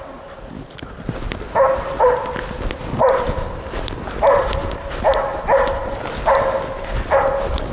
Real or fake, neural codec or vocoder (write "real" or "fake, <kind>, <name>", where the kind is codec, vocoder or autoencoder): real